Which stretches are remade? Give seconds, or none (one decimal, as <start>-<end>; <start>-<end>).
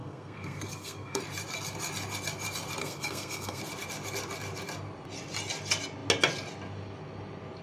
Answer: 0.0-1.2; 2.8-3.6